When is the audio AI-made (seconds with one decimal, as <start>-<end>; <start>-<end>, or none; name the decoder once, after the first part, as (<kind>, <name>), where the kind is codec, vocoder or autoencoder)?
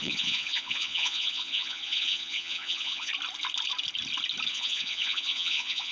0.0-3.1 (vocoder, Vocos); 4.5-5.9